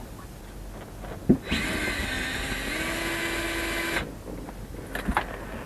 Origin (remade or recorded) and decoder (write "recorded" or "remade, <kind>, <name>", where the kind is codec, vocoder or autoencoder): recorded